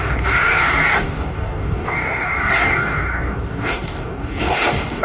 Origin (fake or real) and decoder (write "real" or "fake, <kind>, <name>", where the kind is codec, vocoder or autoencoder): fake, codec, DAC